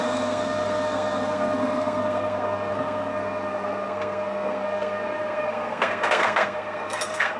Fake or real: fake